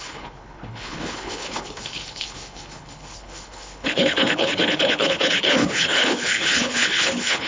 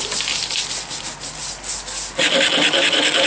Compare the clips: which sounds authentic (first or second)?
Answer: second